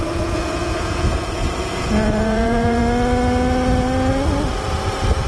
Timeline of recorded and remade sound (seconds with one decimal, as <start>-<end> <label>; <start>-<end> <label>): 0.0-2.8 remade; 2.8-5.3 recorded